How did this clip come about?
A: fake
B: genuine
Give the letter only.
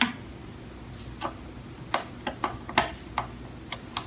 B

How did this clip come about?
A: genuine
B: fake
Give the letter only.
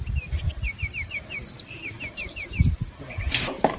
B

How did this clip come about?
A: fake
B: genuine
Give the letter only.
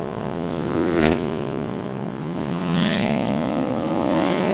A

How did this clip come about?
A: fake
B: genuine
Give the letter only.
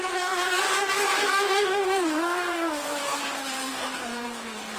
A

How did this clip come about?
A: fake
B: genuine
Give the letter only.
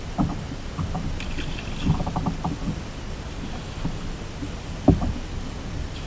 B